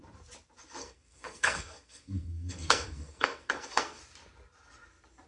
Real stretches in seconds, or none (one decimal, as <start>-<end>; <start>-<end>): 0.0-0.8; 4.0-5.3